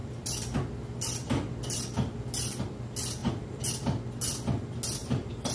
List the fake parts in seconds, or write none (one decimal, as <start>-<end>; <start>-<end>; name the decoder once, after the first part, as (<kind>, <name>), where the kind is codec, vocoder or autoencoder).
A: 3.2-3.7 (vocoder, BigVGAN v2); 5.0-5.5